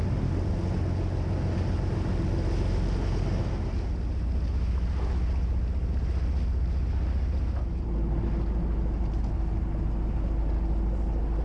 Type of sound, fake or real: real